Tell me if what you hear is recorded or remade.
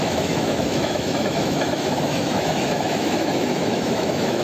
remade